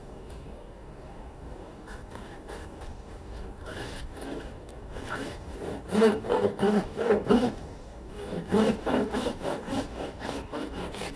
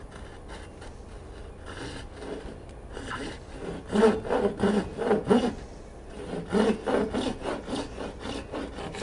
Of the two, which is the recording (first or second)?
second